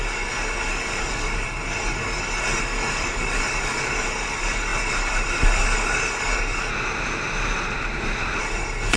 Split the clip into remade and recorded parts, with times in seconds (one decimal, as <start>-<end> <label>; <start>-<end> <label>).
0.0-6.7 remade; 6.7-8.4 recorded; 8.4-9.0 remade